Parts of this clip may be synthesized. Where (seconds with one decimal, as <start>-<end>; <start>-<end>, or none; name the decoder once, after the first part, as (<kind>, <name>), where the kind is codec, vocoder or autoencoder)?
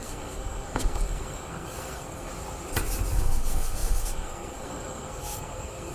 0.0-2.3 (codec, SNAC); 3.1-5.9